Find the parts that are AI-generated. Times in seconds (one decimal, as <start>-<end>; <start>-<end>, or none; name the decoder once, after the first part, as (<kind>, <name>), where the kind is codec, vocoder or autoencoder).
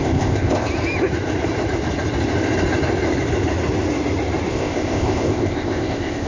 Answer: 0.0-0.7 (codec, ZipCodec); 4.5-6.3